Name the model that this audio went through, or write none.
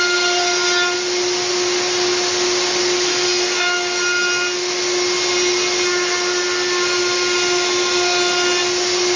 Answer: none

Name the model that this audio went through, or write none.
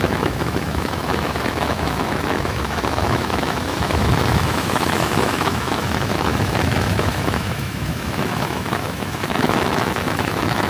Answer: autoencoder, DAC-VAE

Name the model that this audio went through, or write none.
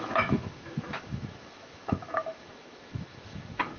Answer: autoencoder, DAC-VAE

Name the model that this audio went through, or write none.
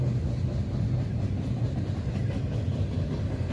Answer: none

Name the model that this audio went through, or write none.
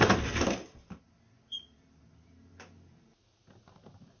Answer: none